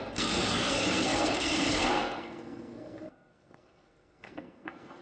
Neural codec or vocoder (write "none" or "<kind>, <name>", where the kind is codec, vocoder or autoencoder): codec, SNAC